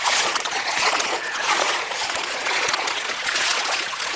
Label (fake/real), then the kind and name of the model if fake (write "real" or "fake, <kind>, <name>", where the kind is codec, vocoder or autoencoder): fake, vocoder, Vocos